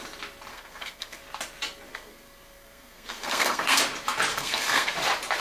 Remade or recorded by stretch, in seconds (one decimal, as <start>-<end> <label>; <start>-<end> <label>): 0.0-0.5 recorded; 0.5-1.2 remade; 1.2-1.9 recorded; 1.9-3.8 remade; 3.8-4.3 recorded; 4.3-4.9 remade; 4.9-5.4 recorded